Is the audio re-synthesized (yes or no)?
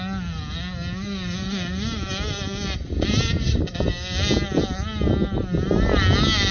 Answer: no